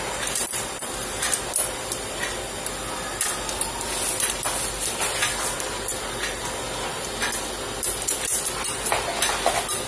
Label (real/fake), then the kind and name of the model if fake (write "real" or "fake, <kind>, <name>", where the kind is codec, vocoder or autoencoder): real